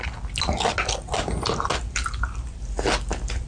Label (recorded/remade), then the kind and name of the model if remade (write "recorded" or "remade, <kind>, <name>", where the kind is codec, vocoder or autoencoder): recorded